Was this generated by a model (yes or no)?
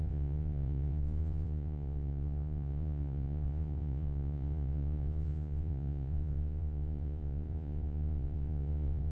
yes